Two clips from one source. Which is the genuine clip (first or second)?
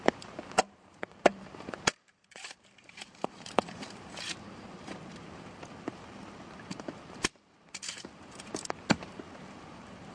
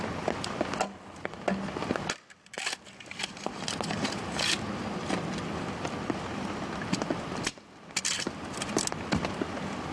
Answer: second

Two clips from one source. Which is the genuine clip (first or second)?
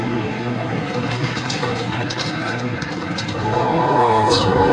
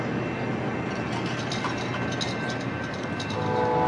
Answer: second